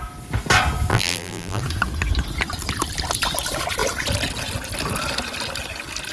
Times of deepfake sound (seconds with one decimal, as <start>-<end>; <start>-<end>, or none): 0.9-1.6